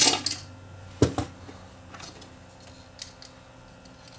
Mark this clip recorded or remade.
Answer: recorded